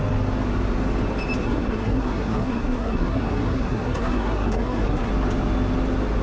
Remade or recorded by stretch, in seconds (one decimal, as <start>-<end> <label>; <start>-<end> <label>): 0.0-1.4 recorded; 1.4-5.1 remade; 5.1-6.2 recorded